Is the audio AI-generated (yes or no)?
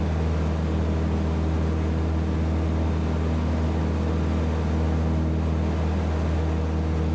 no